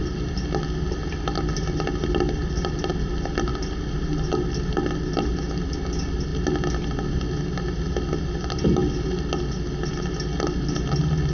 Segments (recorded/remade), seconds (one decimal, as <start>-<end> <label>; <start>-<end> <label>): 0.0-11.3 recorded